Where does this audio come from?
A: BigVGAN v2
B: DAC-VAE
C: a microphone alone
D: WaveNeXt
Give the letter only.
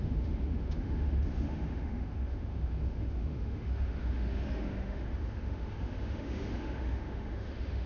B